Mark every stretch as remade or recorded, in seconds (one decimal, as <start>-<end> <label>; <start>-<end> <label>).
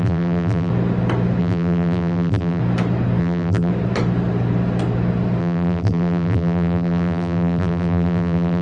0.0-0.7 remade; 0.7-1.4 recorded; 1.4-2.6 remade; 2.6-3.2 recorded; 3.2-3.7 remade; 3.7-5.4 recorded; 5.4-8.6 remade